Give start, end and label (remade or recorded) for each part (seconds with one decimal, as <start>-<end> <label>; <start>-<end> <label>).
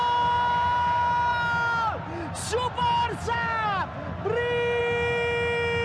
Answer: 0.0-5.8 recorded